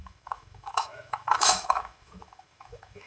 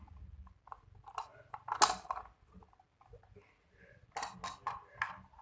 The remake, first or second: first